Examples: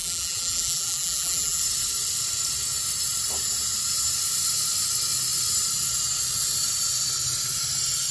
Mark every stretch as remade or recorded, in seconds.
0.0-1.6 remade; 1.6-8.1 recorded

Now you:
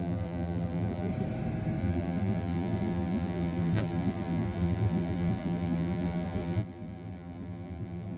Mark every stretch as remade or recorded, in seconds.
0.0-1.1 remade; 1.1-1.8 recorded; 1.8-8.2 remade

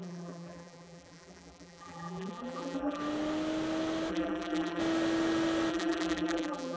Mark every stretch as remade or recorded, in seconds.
0.0-3.0 remade; 3.0-4.1 recorded; 4.1-4.8 remade; 4.8-5.7 recorded; 5.7-6.8 remade

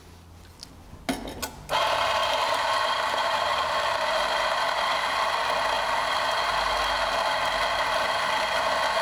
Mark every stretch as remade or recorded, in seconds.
0.0-2.2 recorded; 2.2-3.5 remade; 3.5-9.0 recorded

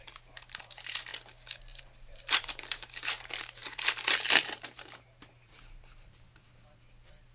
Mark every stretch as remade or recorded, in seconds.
0.0-1.1 remade; 1.1-1.8 recorded; 1.8-7.3 remade

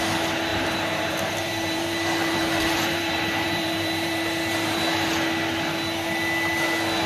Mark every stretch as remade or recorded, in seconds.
0.0-0.5 recorded; 0.5-4.8 remade; 4.8-7.1 recorded

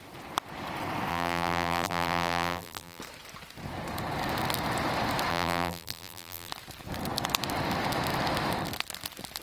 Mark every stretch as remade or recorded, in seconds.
0.0-1.1 recorded; 1.1-3.0 remade; 3.0-5.3 recorded; 5.3-6.5 remade; 6.5-9.4 recorded